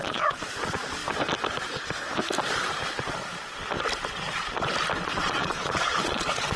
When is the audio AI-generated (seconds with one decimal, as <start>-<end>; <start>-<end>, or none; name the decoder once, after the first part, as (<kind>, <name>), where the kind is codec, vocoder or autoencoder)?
0.0-1.0 (vocoder, Vocos); 5.0-6.6